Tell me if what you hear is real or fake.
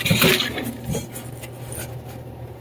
real